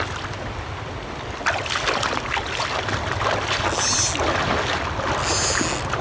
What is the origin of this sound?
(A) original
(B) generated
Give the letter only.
A